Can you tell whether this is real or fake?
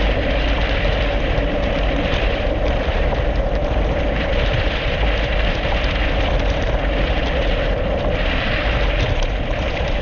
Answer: fake